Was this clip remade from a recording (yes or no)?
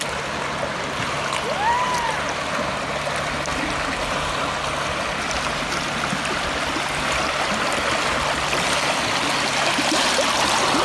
no